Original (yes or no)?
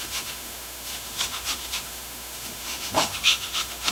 no